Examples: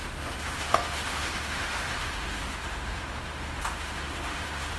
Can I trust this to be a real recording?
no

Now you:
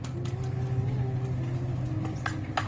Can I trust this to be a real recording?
yes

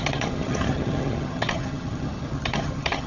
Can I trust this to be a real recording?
no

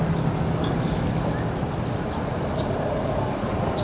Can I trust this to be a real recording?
yes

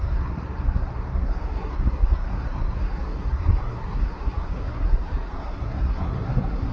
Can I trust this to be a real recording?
no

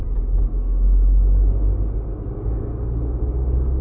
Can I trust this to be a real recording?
yes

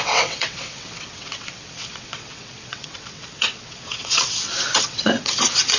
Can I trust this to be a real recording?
no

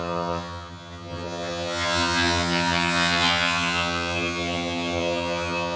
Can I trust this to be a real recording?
no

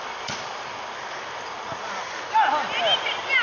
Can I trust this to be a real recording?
yes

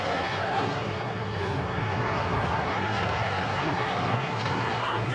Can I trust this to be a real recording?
no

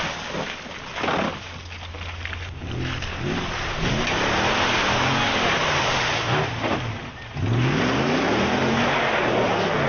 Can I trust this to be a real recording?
yes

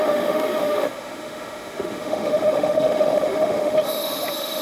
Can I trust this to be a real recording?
no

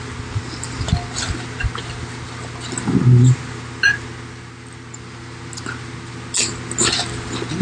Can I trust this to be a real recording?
yes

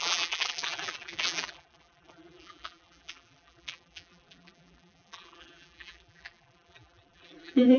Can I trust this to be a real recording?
no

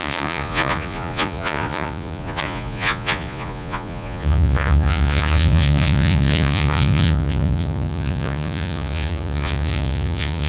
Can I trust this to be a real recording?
no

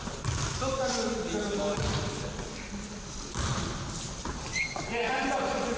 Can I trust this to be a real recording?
yes